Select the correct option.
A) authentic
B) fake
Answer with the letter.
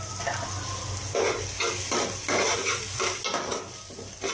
A